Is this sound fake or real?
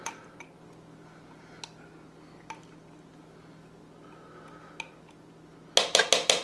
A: real